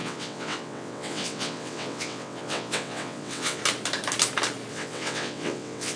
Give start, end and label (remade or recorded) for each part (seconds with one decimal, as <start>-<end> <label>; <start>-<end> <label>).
0.0-3.6 remade; 3.6-4.7 recorded; 4.7-6.0 remade